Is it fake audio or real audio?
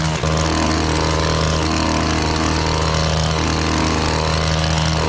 real